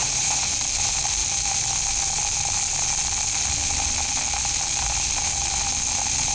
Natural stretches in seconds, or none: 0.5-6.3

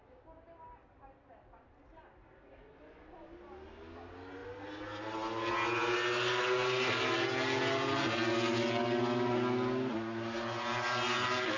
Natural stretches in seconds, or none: 0.0-11.6

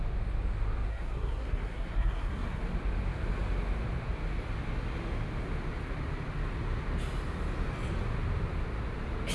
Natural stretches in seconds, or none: 0.0-0.9; 2.6-9.3

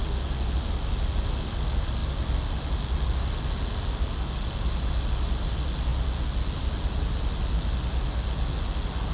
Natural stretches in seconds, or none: 0.0-9.1

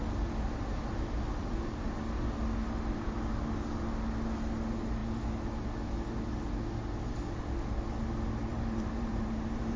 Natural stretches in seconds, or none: 0.0-1.4; 2.0-8.5